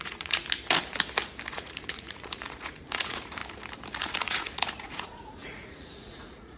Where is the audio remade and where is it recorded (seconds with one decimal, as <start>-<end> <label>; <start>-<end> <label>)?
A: 0.0-0.4 remade; 0.4-1.5 recorded; 1.5-3.4 remade; 3.4-4.0 recorded; 4.0-6.6 remade

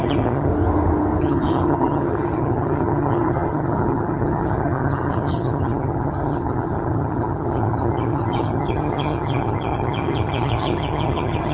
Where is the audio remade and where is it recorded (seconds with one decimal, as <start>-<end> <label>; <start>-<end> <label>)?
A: 0.0-0.5 remade; 0.5-1.2 recorded; 1.2-11.5 remade

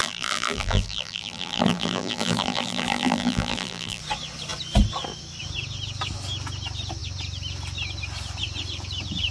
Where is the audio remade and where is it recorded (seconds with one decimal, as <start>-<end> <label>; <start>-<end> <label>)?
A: 0.0-4.0 remade; 4.0-9.3 recorded

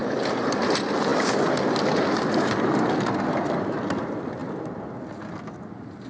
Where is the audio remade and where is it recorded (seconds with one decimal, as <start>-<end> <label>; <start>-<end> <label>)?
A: 0.0-6.1 recorded

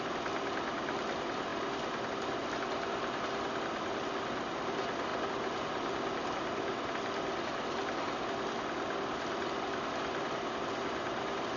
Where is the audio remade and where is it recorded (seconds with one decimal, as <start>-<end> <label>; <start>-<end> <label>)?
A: 0.0-11.6 recorded

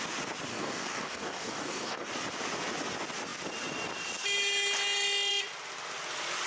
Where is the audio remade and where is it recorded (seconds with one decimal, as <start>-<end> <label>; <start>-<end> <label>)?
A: 0.0-0.5 recorded; 0.5-2.1 remade; 2.1-6.5 recorded

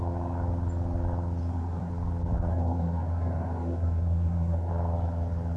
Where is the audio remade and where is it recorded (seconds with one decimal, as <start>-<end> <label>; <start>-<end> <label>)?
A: 0.0-1.4 recorded; 1.4-1.9 remade; 1.9-2.5 recorded; 2.5-4.7 remade; 4.7-5.6 recorded